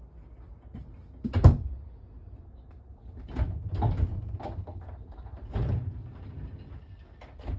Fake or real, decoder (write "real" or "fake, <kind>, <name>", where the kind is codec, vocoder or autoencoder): real